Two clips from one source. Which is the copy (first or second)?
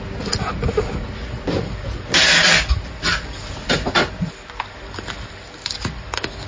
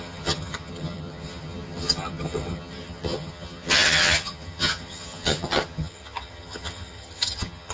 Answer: second